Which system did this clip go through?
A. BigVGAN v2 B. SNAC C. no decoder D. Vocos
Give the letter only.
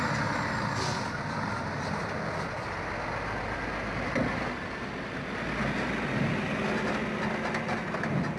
C